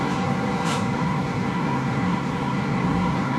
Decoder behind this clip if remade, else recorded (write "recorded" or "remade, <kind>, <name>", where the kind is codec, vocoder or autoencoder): remade, codec, SNAC